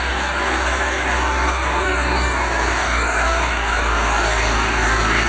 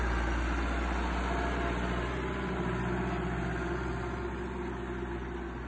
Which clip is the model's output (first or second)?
first